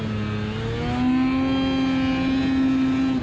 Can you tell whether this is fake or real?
real